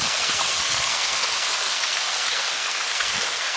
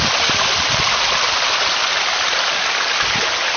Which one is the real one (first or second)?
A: second